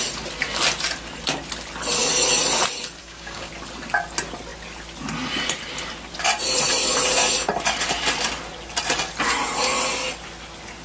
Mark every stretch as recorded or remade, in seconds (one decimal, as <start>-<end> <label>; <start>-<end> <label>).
0.0-3.0 recorded; 3.0-3.5 remade; 3.5-10.8 recorded